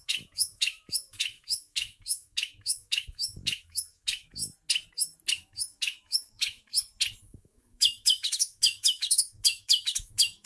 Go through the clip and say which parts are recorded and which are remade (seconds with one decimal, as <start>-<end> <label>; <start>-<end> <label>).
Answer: 0.0-4.4 remade; 4.4-5.3 recorded; 5.3-6.7 remade; 6.7-7.2 recorded; 7.2-10.5 remade